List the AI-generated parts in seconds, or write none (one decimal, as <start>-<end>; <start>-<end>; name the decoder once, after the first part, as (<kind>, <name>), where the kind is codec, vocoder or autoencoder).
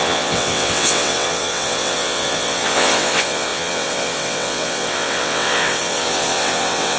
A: 0.0-7.0 (vocoder, WaveNeXt)